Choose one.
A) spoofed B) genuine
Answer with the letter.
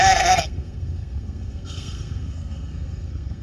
A